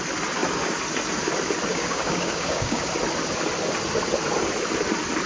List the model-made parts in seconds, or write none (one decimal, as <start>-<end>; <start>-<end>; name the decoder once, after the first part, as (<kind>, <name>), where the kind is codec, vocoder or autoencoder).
1.7-2.9 (codec, DAC)